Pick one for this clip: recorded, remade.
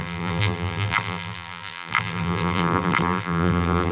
remade